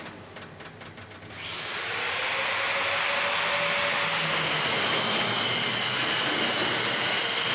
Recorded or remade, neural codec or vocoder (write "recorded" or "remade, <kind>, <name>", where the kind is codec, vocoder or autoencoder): recorded